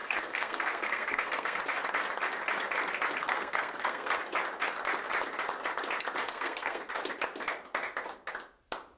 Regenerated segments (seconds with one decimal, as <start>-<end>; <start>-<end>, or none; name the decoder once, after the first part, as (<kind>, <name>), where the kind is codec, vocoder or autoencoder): 0.0-1.6 (codec, SNAC); 3.2-4.2; 6.3-6.8